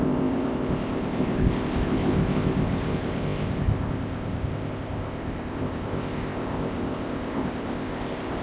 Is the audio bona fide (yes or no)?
no